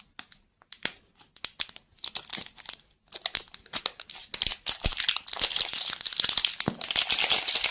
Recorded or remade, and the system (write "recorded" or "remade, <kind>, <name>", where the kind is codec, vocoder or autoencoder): recorded